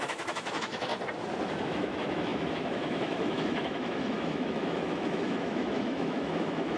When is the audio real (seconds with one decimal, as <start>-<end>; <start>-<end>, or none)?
0.9-1.6